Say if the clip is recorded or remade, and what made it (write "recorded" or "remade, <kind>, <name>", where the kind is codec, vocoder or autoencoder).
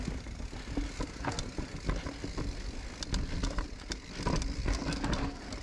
recorded